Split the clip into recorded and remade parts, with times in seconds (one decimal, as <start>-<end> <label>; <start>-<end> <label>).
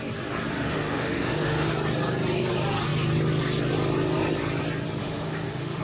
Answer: 0.0-0.5 recorded; 0.5-1.7 remade; 1.7-5.0 recorded; 5.0-5.8 remade